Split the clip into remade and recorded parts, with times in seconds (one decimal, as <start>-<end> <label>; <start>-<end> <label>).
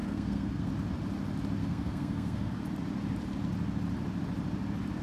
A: 0.0-0.7 remade; 0.7-1.6 recorded; 1.6-2.6 remade; 2.6-5.0 recorded